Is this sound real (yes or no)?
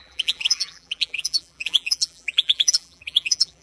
no